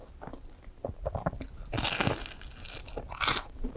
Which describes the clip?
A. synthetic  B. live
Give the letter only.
B